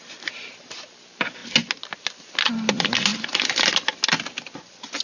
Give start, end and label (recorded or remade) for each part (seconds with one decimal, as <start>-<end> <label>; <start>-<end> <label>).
0.0-5.0 recorded